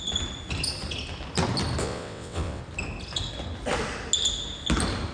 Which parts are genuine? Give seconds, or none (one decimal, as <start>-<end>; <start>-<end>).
0.0-1.8; 2.6-5.1

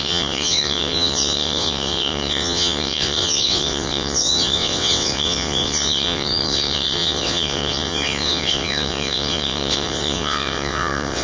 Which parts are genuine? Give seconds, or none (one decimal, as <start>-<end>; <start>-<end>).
none

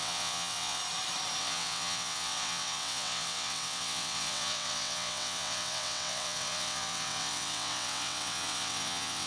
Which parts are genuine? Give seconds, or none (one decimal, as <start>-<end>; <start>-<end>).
0.8-1.4

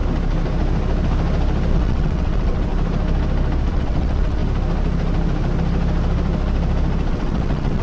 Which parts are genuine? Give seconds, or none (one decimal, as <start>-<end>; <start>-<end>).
0.0-1.7; 2.7-3.7; 4.4-7.1

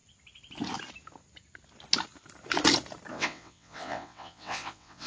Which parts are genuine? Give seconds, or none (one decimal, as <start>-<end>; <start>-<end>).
0.0-3.1

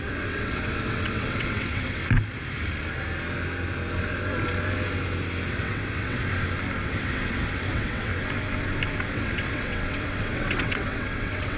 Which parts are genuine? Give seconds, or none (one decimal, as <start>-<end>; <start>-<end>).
2.0-5.5; 6.2-6.8; 8.1-9.1

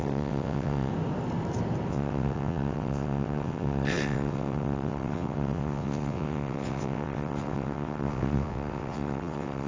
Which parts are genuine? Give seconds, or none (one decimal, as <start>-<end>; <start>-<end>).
0.9-1.9

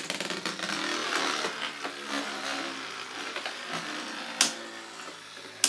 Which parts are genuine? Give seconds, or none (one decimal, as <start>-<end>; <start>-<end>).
0.0-5.7